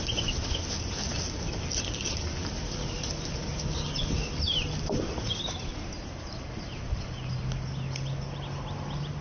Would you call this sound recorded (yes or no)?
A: yes